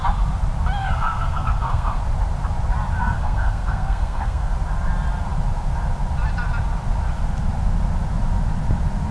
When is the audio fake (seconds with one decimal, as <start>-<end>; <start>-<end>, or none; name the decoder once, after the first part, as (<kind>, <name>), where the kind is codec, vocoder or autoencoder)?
0.8-2.0 (codec, SNAC); 3.0-4.5